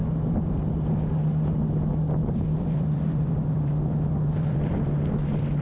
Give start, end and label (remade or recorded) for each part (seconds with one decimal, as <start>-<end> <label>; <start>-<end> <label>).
0.0-2.2 recorded; 2.2-5.1 remade; 5.1-5.6 recorded